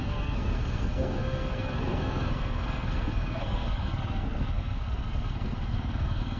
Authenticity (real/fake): fake